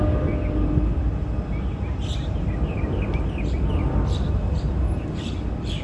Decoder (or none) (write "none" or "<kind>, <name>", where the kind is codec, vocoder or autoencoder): none